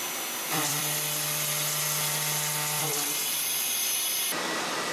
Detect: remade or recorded remade